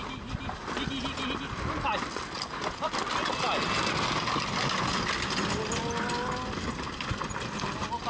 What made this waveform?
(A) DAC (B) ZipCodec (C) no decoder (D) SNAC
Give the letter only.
C